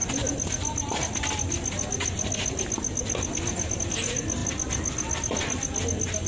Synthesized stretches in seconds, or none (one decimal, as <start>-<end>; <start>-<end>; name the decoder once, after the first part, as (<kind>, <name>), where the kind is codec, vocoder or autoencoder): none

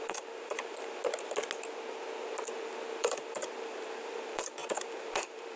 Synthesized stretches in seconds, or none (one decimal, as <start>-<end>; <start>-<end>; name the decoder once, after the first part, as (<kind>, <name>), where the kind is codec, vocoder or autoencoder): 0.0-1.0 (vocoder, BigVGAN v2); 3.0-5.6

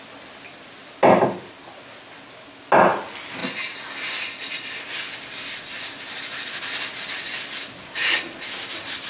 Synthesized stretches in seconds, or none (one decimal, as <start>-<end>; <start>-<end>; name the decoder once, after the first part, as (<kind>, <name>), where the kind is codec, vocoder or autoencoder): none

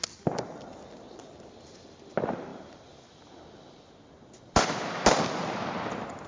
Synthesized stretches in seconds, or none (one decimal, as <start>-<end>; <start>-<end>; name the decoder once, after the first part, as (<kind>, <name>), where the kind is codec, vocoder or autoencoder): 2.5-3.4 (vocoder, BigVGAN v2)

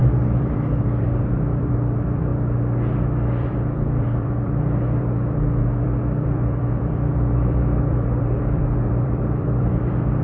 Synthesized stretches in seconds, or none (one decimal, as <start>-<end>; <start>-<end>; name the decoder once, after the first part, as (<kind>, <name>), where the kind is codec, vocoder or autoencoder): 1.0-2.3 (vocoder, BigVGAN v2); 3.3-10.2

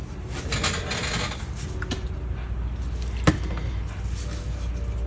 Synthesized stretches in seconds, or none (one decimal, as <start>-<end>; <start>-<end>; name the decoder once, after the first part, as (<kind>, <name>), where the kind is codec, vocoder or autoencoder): none